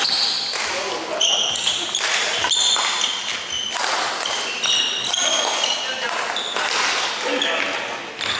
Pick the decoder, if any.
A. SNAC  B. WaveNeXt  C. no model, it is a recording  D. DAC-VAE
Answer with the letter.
C